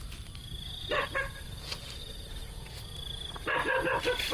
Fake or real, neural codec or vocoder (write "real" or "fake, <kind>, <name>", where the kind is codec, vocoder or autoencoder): real